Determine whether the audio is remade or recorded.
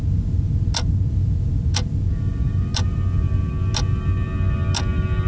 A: recorded